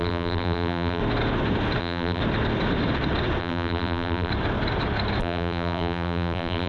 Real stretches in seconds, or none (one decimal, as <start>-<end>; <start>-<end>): 1.0-1.8; 2.2-3.4; 4.3-5.2